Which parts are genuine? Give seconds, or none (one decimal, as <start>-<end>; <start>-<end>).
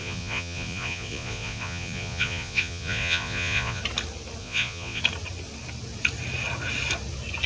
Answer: 3.8-4.4; 5.0-7.5